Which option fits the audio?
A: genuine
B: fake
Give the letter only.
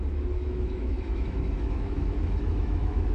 B